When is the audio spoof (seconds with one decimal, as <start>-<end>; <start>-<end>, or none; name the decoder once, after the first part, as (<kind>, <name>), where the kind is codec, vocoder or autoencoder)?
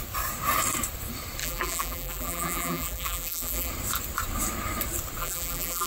1.4-3.7 (vocoder, BigVGAN v2); 5.2-5.9